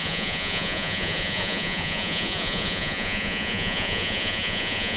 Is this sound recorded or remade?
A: remade